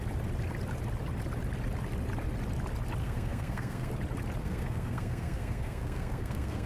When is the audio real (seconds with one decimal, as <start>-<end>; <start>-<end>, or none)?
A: 0.0-3.0; 3.9-4.4